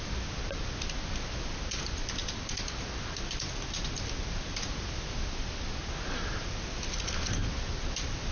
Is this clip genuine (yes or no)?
yes